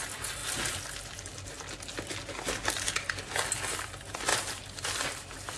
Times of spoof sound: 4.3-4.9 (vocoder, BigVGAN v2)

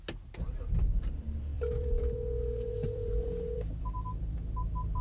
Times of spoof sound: 1.5-4.5 (vocoder, BigVGAN v2)

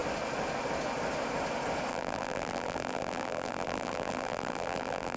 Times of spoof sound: 1.9-5.2 (vocoder, BigVGAN v2)

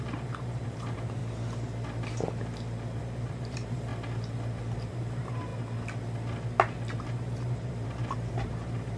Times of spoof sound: 0.0-1.2 (vocoder, BigVGAN v2); 3.0-3.9; 4.9-5.5; 7.0-9.0